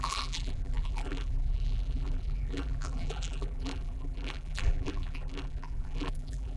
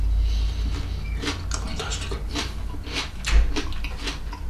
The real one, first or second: second